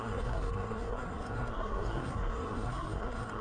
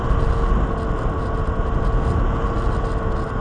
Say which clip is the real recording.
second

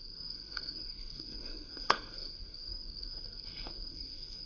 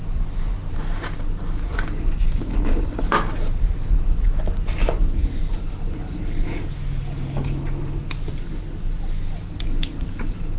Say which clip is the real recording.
second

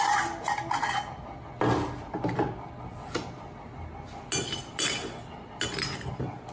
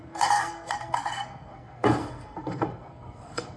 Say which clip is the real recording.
first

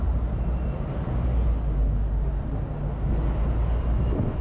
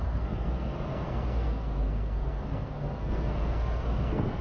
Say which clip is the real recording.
first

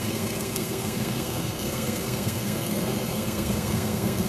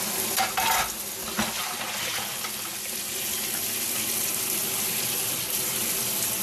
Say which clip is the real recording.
second